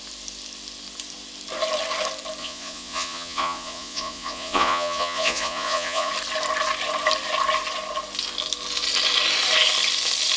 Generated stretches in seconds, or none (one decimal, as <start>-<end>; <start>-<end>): 2.4-6.1